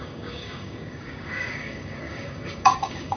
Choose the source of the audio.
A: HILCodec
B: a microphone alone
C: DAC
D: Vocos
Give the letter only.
C